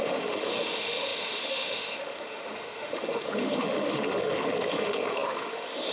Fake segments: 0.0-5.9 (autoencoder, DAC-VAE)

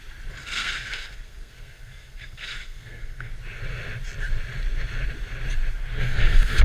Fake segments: 0.4-3.3 (codec, SNAC); 6.0-6.6